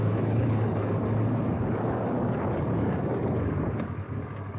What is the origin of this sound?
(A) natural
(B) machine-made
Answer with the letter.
B